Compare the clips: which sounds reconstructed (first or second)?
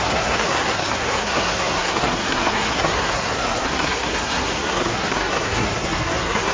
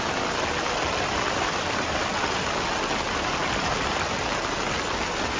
first